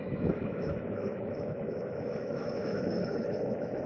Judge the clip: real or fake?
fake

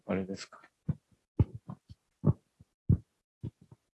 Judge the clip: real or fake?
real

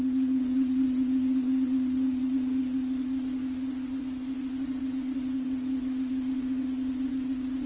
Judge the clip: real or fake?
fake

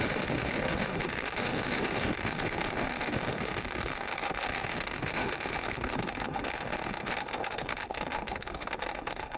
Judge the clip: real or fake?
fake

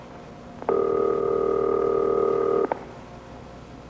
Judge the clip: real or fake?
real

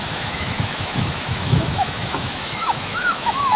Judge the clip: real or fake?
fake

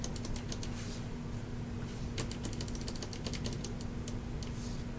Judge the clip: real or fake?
real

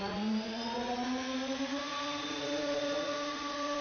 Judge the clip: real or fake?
fake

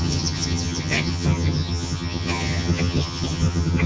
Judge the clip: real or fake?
fake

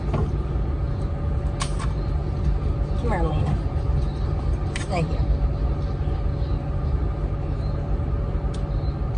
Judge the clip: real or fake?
real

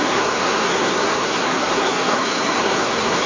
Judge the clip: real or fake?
fake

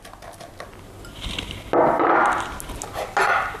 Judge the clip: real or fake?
real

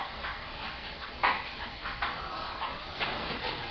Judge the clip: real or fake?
fake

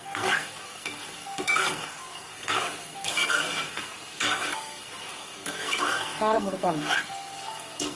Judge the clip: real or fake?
fake